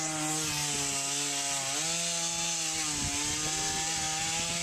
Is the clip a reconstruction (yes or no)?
no